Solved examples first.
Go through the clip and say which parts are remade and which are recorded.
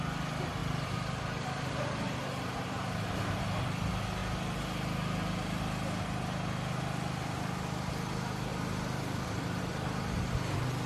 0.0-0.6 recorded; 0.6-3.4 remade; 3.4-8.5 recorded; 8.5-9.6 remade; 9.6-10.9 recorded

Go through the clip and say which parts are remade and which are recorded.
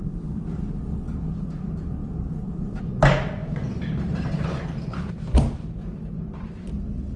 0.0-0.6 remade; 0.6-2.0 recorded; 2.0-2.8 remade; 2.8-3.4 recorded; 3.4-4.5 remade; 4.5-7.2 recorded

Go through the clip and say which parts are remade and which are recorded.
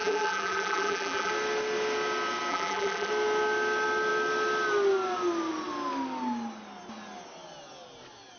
0.0-1.3 remade; 1.3-2.5 recorded; 2.5-3.1 remade; 3.1-8.4 recorded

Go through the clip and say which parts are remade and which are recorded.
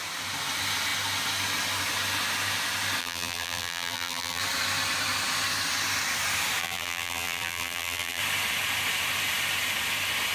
0.0-3.0 recorded; 3.0-4.4 remade; 4.4-6.6 recorded; 6.6-8.2 remade; 8.2-10.3 recorded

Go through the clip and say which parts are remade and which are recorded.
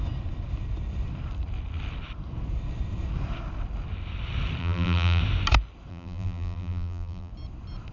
0.0-4.6 recorded; 4.6-5.2 remade; 5.2-5.9 recorded; 5.9-7.3 remade; 7.3-7.9 recorded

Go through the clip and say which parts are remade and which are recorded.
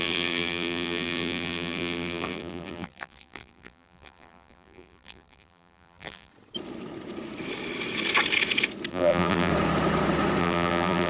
0.0-6.3 remade; 6.3-8.9 recorded; 8.9-9.5 remade; 9.5-10.4 recorded; 10.4-11.1 remade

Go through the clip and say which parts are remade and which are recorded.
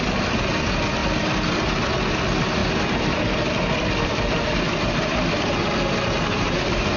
0.0-2.6 recorded; 2.6-5.5 remade; 5.5-7.0 recorded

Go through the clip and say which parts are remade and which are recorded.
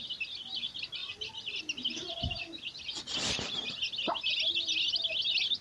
0.0-1.0 recorded; 1.0-1.6 remade; 1.6-5.6 recorded